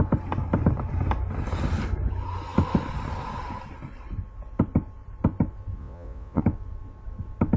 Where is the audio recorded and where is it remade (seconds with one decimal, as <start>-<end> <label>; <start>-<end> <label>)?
0.0-5.8 recorded; 5.8-6.4 remade; 6.4-7.6 recorded